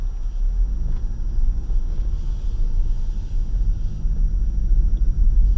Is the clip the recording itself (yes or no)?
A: yes